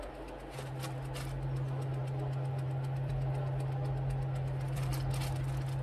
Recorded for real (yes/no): yes